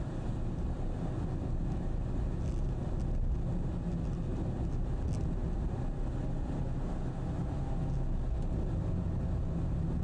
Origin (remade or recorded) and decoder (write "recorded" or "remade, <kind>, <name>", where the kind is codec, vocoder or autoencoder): recorded